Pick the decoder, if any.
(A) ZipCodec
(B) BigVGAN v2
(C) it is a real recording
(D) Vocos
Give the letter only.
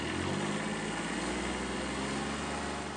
C